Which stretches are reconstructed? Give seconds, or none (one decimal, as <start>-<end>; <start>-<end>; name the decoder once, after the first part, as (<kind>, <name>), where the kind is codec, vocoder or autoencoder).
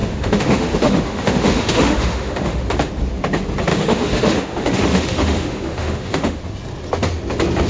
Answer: 0.0-2.9 (autoencoder, DAC-VAE); 3.7-6.4